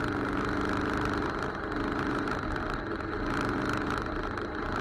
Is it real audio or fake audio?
real